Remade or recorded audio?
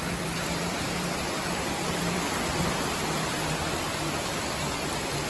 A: remade